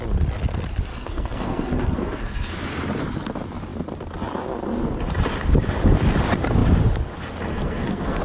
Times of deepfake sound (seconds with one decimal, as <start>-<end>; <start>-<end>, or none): 0.9-2.5; 7.5-8.2